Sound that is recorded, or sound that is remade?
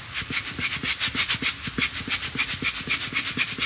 recorded